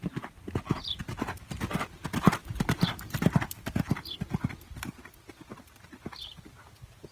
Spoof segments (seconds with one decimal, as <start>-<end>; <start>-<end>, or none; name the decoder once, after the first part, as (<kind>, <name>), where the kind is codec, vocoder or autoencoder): 2.4-5.1 (vocoder, BigVGAN v2)